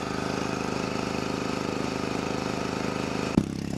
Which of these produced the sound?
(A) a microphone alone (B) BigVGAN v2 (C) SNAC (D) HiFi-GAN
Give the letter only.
B